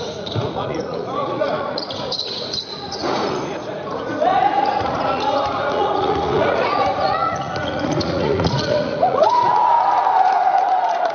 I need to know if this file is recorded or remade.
remade